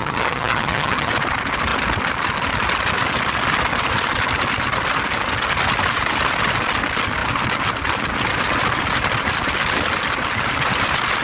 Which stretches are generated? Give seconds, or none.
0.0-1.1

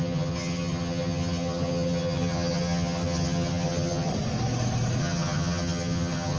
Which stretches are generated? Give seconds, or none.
0.0-4.1; 5.0-6.4